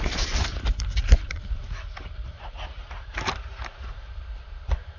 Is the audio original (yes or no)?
no